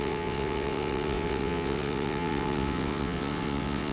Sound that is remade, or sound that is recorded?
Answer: remade